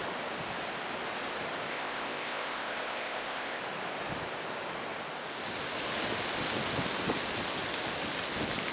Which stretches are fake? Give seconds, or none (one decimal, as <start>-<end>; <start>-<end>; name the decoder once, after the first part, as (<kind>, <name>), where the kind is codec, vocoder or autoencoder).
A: 1.7-3.6 (codec, ZipCodec)